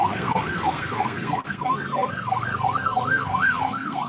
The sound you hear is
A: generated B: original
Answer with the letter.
A